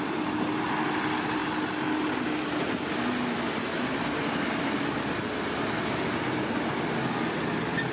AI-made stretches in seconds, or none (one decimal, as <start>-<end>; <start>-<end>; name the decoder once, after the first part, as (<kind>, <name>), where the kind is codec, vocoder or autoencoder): none